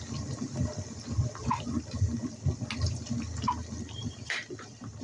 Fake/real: real